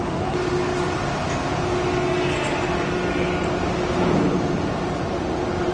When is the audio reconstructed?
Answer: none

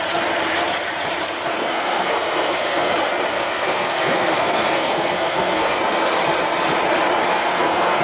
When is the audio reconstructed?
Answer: 1.5-2.9; 3.3-5.8; 7.3-8.0

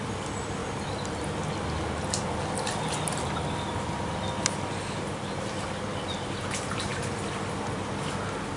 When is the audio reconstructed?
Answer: none

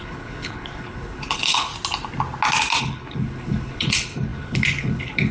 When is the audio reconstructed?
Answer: 0.0-1.7; 2.8-5.3

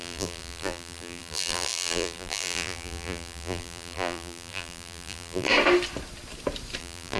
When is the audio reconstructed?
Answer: 0.0-5.5; 6.8-7.2